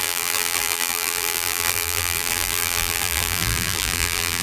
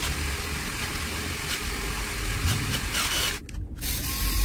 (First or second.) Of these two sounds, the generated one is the first